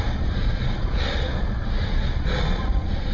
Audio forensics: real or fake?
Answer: fake